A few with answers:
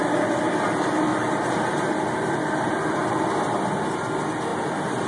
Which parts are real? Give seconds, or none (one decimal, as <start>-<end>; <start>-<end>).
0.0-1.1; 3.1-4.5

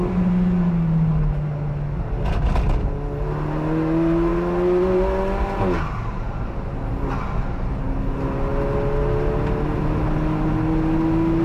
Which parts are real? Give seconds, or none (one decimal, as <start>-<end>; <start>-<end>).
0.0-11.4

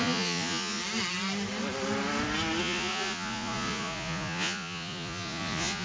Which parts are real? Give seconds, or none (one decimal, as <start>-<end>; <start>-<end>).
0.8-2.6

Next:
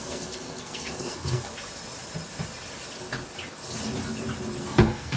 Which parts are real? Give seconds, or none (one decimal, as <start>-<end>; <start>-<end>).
1.5-4.6

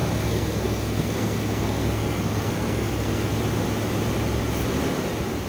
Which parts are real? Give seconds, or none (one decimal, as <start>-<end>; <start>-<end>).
3.3-5.5

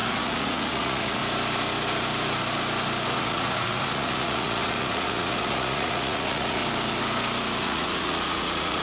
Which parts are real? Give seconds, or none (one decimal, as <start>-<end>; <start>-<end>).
1.2-3.2; 6.6-7.6

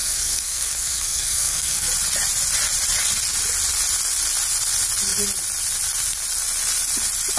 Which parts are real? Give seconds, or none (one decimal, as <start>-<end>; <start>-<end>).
1.9-7.4